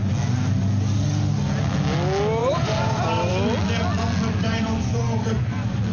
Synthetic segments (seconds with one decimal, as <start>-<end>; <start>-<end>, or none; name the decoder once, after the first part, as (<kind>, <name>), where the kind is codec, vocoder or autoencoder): 2.4-3.3 (vocoder, BigVGAN v2)

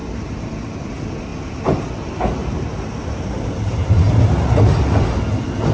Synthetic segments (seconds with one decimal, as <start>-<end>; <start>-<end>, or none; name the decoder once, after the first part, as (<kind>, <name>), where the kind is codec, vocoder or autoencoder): 0.0-0.9 (vocoder, BigVGAN v2); 2.4-4.4

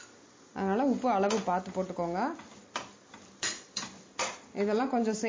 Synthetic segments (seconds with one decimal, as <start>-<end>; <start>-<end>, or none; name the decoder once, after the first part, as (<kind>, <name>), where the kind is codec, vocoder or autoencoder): 0.0-0.5 (vocoder, BigVGAN v2); 2.5-5.3

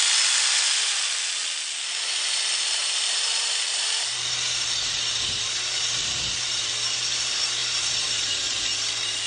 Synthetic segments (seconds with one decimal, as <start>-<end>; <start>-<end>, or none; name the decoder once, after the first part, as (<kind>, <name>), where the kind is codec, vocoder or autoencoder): 2.8-6.5 (vocoder, BigVGAN v2); 7.6-8.5